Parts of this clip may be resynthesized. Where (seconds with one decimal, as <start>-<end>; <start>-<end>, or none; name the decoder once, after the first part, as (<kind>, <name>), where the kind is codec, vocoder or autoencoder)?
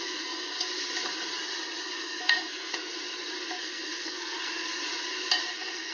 0.0-0.5 (codec, SNAC); 1.8-2.9; 3.6-4.8; 5.5-5.9